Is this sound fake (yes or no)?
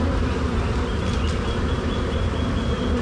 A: no